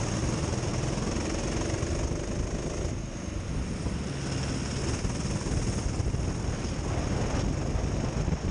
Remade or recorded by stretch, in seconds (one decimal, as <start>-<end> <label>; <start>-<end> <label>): 0.0-8.5 recorded